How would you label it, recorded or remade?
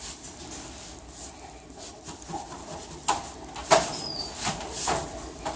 recorded